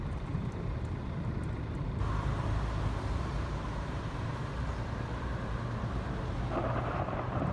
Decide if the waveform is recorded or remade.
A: remade